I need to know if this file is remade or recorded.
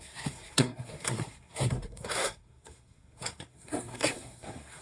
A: remade